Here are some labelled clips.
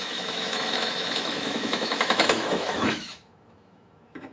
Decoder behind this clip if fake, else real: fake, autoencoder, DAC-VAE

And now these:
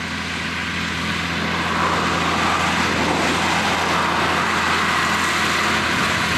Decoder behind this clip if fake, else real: real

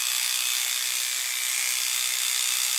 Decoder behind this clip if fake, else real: real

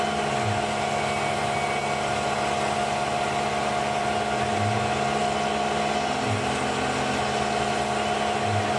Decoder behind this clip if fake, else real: real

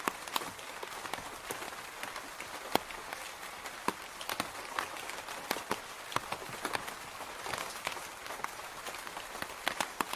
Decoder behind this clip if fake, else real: real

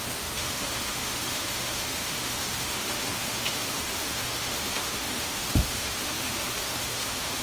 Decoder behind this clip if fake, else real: fake, autoencoder, DAC-VAE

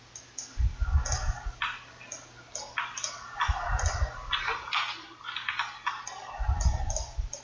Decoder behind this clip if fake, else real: real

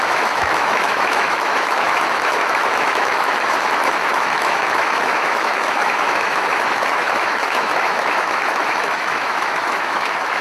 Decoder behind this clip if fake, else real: fake, autoencoder, DAC-VAE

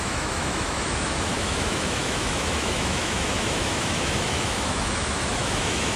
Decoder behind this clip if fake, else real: fake, autoencoder, DAC-VAE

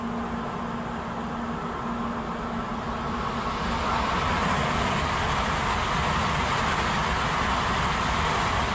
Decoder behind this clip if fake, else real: real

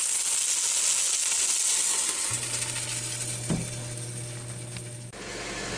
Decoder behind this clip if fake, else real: real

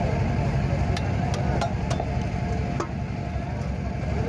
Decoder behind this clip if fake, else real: real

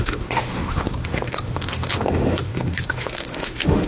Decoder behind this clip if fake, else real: fake, autoencoder, DAC-VAE